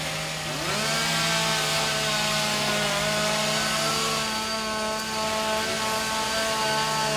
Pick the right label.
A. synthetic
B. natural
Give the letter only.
B